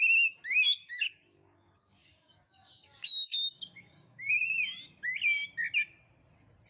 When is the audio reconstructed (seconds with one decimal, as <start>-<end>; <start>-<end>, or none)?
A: 0.8-4.3